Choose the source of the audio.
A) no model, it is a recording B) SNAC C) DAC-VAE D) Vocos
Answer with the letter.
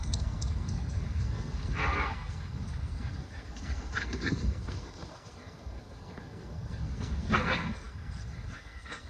B